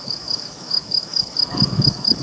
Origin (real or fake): fake